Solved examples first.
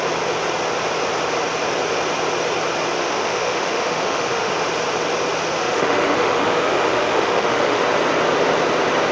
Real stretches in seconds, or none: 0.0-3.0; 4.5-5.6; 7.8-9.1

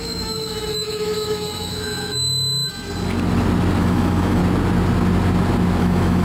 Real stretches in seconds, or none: 2.7-3.8; 4.4-5.8